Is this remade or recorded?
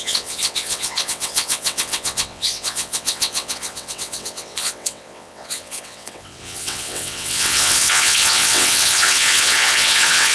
remade